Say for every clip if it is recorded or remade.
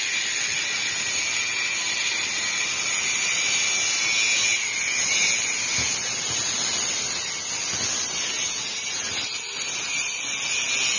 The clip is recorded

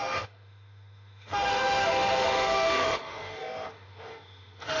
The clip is remade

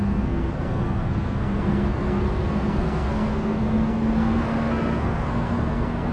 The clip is remade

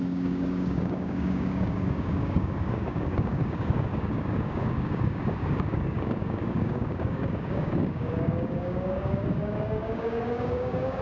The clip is remade